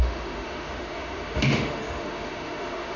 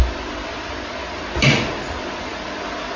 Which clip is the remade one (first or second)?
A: first